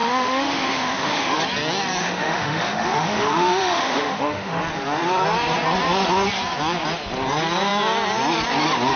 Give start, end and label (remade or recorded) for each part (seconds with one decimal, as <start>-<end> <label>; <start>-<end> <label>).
0.0-1.4 remade; 1.4-2.0 recorded; 2.0-4.6 remade; 4.6-9.0 recorded